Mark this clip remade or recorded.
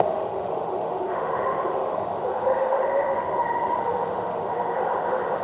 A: remade